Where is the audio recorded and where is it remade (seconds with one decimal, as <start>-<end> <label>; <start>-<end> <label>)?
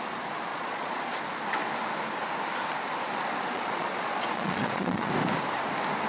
0.0-0.5 recorded; 0.5-1.2 remade; 1.2-3.5 recorded; 3.5-5.1 remade; 5.1-6.1 recorded